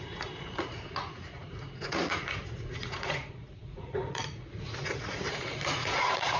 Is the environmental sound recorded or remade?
remade